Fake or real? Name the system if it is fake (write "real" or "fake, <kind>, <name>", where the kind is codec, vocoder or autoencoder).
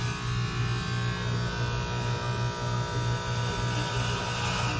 real